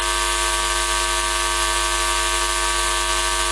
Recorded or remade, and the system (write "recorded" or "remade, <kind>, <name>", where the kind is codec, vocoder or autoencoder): recorded